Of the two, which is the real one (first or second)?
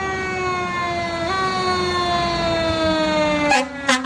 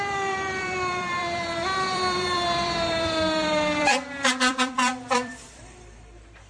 first